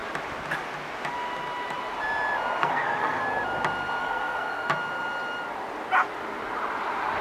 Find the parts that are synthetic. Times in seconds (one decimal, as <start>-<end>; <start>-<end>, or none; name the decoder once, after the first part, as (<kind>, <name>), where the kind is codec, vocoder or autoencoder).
2.6-3.2 (codec, SNAC); 4.0-4.7